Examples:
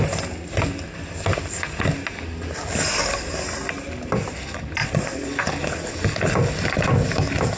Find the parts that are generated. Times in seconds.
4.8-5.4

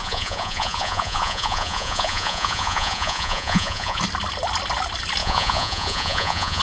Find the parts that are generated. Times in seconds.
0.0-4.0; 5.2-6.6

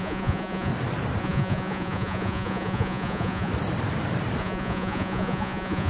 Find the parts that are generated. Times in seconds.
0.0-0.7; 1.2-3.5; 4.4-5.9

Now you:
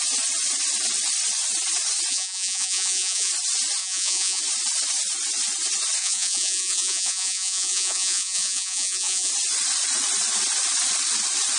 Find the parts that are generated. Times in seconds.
2.1-3.3; 3.8-4.4; 6.0-9.3